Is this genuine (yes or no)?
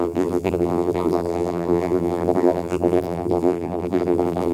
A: no